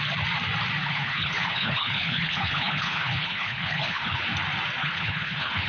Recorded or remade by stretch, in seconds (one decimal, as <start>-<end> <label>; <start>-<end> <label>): 0.0-0.8 recorded; 0.8-4.2 remade; 4.2-4.8 recorded; 4.8-5.7 remade